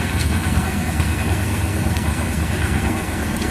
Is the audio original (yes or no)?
no